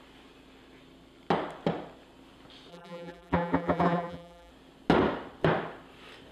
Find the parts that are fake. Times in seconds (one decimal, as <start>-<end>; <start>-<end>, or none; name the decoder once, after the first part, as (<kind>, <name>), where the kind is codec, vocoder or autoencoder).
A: 2.7-4.5 (vocoder, BigVGAN v2)

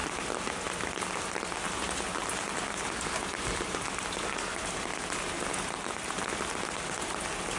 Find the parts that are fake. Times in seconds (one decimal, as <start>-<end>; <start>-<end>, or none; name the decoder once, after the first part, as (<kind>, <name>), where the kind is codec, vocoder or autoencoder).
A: none